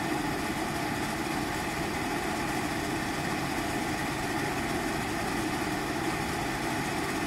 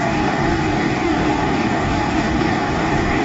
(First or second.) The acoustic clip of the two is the first